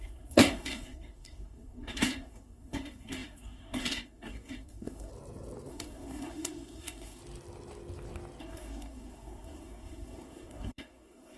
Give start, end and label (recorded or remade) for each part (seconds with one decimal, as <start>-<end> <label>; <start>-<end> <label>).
0.0-5.1 remade; 5.1-5.7 recorded; 5.7-7.2 remade; 7.2-8.4 recorded; 8.4-11.4 remade